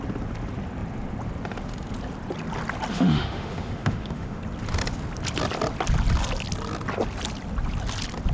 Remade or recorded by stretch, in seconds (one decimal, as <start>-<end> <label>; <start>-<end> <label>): 0.0-2.9 recorded; 2.9-4.4 remade; 4.4-8.3 recorded